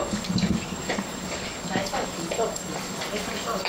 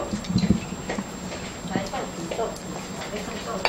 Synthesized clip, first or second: first